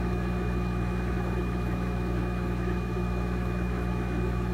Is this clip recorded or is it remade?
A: remade